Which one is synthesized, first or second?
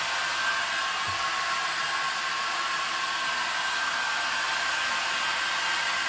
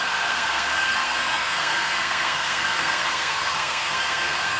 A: second